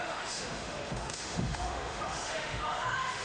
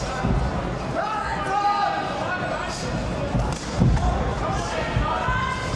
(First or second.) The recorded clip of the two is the second